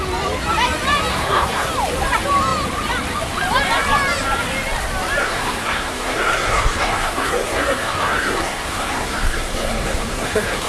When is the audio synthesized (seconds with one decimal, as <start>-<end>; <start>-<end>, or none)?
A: 1.1-1.7; 5.2-10.7